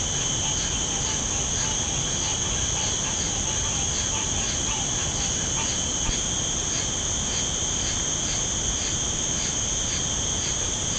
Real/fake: real